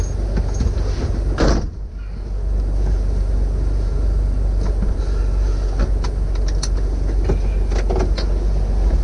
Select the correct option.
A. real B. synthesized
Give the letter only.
A